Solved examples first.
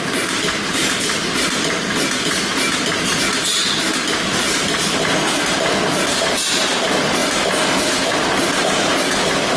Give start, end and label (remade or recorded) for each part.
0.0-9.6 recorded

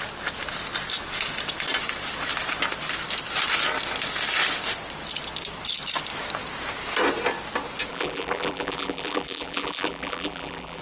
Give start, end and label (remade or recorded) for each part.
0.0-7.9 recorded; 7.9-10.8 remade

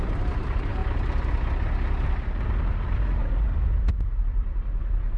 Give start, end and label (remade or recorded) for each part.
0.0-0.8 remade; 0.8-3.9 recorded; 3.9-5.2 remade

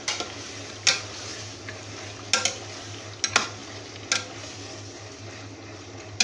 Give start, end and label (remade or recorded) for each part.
0.0-6.2 recorded

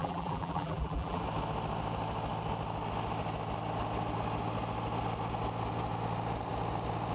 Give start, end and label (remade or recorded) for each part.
0.0-1.2 remade; 1.2-7.1 recorded